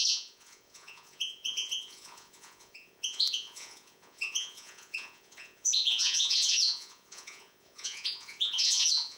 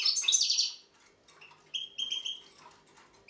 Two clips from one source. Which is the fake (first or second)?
first